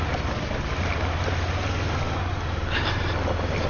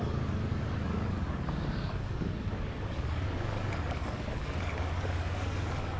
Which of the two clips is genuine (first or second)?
first